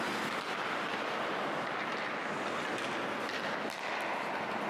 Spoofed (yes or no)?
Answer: no